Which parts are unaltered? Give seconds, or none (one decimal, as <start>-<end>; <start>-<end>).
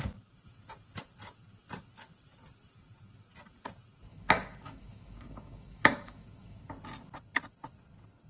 0.0-4.1; 6.7-8.3